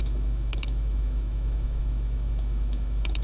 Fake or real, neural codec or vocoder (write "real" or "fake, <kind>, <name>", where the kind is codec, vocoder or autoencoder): fake, autoencoder, DAC-VAE